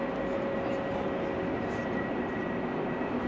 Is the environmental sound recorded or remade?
recorded